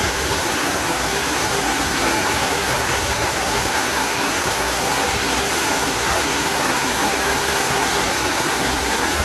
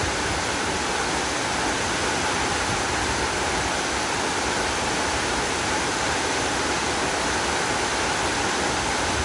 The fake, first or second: first